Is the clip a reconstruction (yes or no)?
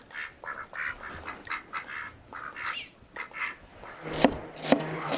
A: no